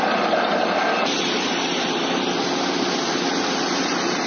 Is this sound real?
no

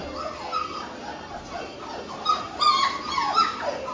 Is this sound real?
yes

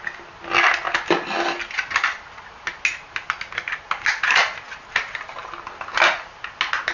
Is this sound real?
yes